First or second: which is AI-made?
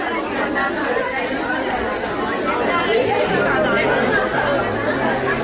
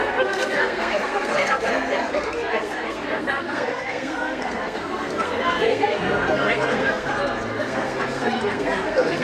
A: second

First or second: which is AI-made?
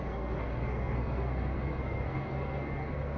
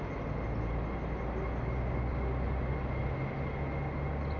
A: first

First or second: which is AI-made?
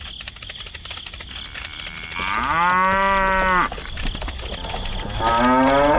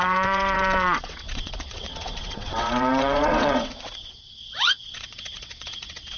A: second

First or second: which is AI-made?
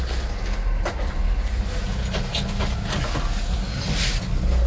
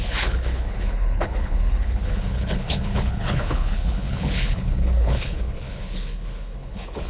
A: second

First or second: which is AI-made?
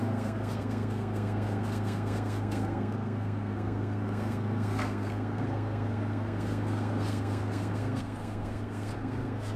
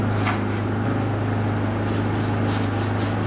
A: first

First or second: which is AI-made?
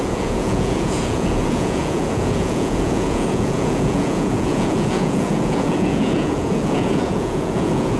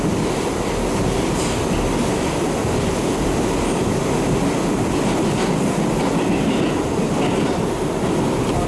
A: first